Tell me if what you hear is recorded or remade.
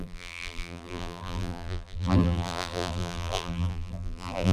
remade